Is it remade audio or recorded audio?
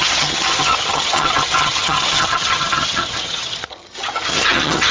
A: remade